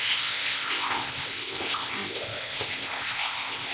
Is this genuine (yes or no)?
no